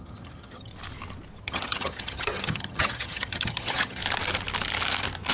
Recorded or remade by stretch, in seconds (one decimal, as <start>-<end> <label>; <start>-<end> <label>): 0.0-0.7 remade; 0.7-1.4 recorded; 1.4-4.0 remade; 4.0-5.3 recorded